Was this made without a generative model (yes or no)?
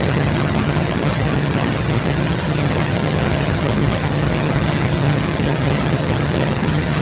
no